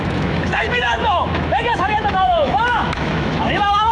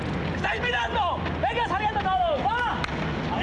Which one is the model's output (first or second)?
first